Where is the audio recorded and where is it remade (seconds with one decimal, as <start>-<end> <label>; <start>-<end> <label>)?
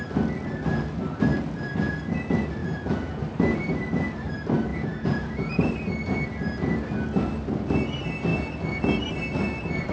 0.0-2.6 recorded; 2.6-3.2 remade; 3.2-4.7 recorded; 4.7-5.7 remade; 5.7-9.9 recorded